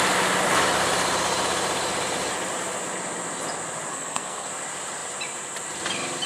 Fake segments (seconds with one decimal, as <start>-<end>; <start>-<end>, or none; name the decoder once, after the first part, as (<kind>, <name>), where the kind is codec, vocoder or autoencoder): 3.9-4.5 (codec, SNAC)